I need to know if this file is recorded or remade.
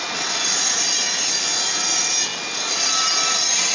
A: recorded